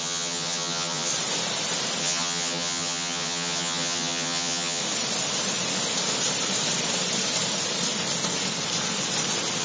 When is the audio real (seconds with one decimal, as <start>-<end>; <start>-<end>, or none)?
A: 1.1-2.0; 4.8-9.6